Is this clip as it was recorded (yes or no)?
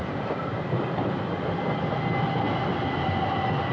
yes